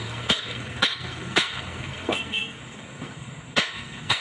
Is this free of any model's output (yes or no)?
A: no